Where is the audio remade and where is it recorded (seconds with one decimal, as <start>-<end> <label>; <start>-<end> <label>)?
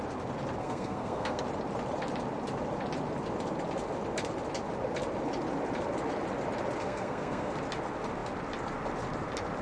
0.0-0.6 recorded; 0.6-1.4 remade; 1.4-6.8 recorded; 6.8-7.5 remade; 7.5-9.6 recorded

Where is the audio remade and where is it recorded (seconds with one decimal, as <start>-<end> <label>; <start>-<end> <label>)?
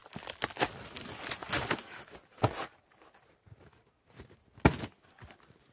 0.0-5.7 recorded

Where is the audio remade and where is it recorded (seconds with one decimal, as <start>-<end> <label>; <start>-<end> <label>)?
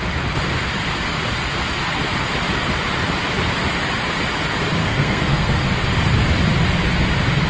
0.0-4.8 recorded; 4.8-5.7 remade; 5.7-7.5 recorded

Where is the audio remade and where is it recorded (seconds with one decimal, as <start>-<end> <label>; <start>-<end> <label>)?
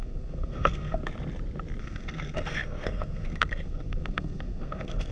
0.0-1.0 remade; 1.0-1.8 recorded; 1.8-5.1 remade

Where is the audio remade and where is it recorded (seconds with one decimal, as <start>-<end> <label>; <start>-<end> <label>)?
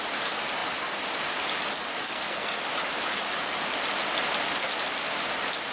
0.0-2.0 recorded; 2.0-2.6 remade; 2.6-5.7 recorded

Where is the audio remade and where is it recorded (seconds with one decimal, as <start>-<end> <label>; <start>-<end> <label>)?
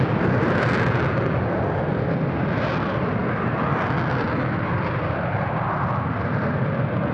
0.0-7.1 recorded